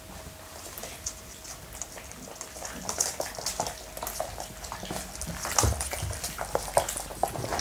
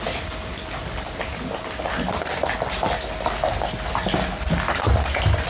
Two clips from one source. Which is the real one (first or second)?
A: first